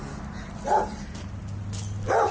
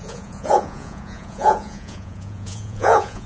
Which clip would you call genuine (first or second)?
first